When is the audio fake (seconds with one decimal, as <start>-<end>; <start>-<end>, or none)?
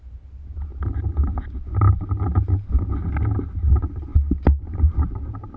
none